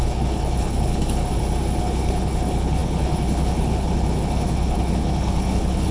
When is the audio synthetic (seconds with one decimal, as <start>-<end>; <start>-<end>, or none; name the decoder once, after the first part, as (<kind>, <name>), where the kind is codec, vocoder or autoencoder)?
0.0-1.3 (codec, HILCodec); 1.8-5.9